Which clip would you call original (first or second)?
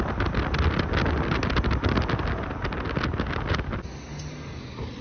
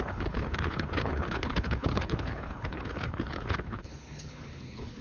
first